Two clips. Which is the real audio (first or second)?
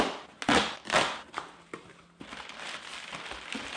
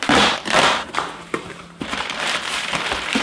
first